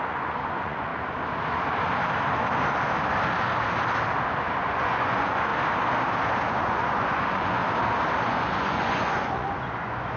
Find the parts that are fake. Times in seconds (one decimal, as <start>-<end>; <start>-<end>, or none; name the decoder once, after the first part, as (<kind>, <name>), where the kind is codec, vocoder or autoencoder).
0.0-0.9 (vocoder, Vocos); 4.5-5.5; 6.5-7.6; 8.2-10.2

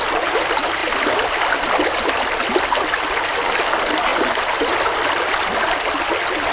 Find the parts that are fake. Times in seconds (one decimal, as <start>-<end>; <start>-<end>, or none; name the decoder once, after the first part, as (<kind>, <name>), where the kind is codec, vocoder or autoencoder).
none

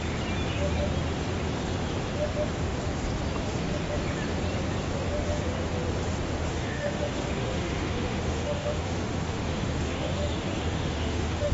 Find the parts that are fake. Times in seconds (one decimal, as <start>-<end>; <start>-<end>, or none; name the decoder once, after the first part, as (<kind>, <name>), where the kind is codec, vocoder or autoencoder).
6.5-11.5 (autoencoder, DAC-VAE)

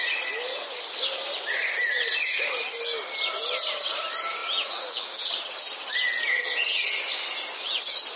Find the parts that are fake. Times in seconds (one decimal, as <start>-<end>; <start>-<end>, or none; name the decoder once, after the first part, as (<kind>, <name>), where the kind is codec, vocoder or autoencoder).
4.4-5.3 (vocoder, BigVGAN v2)

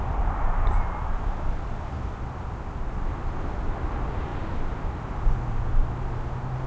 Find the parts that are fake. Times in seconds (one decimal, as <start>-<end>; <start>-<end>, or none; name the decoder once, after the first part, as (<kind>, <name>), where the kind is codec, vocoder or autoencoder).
none